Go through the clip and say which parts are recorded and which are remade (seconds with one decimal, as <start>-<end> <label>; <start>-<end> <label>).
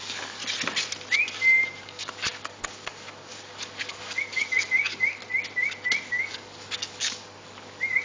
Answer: 0.0-0.4 remade; 0.4-1.8 recorded; 1.8-5.2 remade; 5.2-6.1 recorded; 6.1-8.0 remade